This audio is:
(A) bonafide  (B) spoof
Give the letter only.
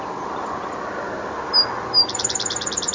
A